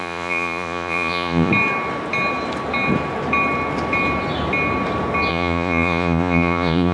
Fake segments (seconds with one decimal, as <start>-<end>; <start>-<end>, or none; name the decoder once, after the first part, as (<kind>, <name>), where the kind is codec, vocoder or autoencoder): 0.0-1.5 (vocoder, Vocos); 5.3-6.9